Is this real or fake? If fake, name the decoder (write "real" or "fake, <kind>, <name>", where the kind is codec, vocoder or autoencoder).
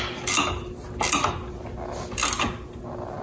real